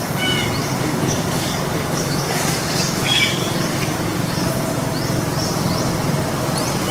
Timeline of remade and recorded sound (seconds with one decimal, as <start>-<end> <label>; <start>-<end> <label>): 0.0-0.6 recorded; 0.6-4.5 remade; 4.5-6.9 recorded

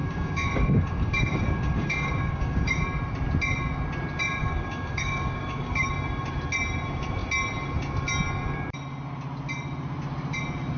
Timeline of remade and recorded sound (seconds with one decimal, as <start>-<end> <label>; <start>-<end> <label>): 0.0-2.8 remade; 2.8-4.4 recorded; 4.4-5.9 remade; 5.9-10.8 recorded

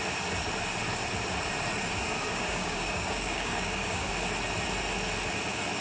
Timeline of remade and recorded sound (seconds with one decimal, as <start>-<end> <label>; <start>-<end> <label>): 0.0-2.3 recorded; 2.3-4.1 remade; 4.1-5.8 recorded

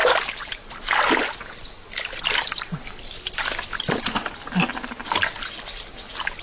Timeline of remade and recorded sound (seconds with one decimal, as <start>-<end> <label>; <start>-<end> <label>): 0.0-6.4 recorded